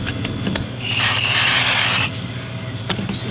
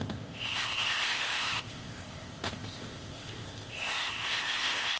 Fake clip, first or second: second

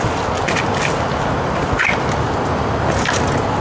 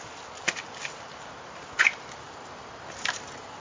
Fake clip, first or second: second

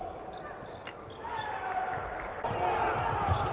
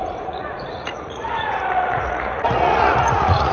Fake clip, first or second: second